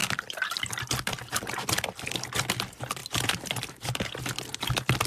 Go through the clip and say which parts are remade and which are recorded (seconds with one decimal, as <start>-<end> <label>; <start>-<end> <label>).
0.0-3.0 recorded; 3.0-3.9 remade; 3.9-5.1 recorded